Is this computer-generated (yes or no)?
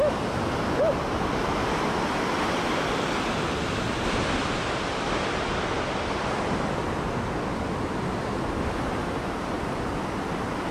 no